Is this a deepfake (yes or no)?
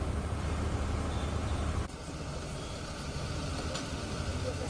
no